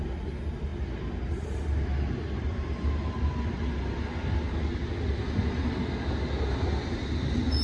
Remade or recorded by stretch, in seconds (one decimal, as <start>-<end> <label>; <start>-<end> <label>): 0.0-7.6 recorded